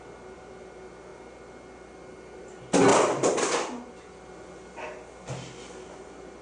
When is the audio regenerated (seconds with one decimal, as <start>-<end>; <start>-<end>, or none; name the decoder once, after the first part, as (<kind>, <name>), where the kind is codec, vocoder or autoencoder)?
2.9-4.2 (vocoder, BigVGAN v2)